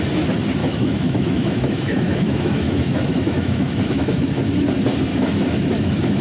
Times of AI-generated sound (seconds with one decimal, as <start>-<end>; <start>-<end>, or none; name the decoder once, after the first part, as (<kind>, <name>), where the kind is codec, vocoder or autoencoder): 0.6-4.3 (autoencoder, DAC-VAE); 5.1-6.2